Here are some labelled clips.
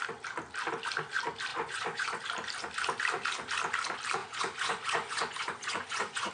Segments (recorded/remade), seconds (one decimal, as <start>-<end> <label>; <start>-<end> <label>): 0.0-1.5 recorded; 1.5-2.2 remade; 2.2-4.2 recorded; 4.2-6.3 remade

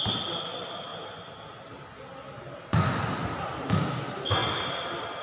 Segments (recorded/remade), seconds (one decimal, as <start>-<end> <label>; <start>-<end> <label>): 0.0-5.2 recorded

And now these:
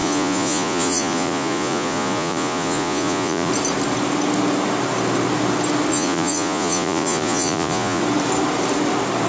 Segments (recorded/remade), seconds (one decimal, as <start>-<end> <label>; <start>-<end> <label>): 0.0-3.5 remade; 3.5-5.9 recorded; 5.9-8.0 remade; 8.0-9.3 recorded

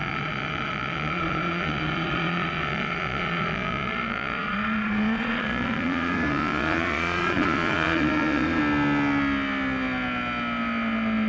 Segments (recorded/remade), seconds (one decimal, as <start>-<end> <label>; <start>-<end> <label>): 0.0-8.6 remade; 8.6-11.3 recorded